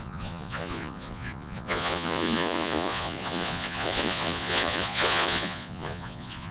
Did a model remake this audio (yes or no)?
yes